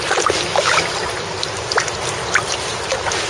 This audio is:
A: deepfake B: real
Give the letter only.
B